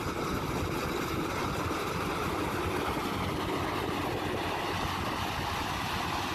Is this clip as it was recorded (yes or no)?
yes